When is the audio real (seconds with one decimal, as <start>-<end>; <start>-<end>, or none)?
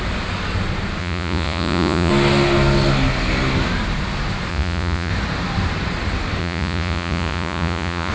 0.0-1.0; 2.1-4.5; 5.1-6.4